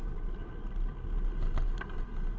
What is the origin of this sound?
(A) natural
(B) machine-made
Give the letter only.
A